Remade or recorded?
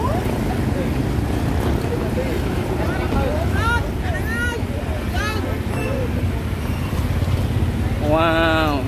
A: recorded